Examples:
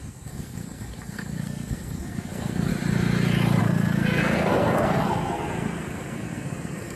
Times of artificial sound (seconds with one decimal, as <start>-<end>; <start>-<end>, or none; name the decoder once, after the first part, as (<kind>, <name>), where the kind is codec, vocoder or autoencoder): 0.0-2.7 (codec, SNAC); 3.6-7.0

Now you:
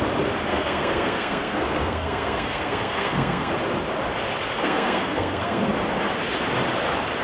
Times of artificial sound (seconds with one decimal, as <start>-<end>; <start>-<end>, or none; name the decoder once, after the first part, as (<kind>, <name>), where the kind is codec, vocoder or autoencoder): 0.5-3.5 (codec, SNAC); 4.6-5.7

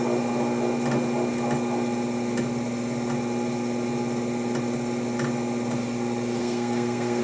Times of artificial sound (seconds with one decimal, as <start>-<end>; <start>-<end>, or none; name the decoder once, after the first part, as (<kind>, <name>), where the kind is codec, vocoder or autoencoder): 6.4-7.2 (codec, SNAC)